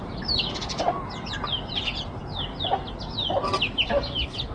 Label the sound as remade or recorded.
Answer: recorded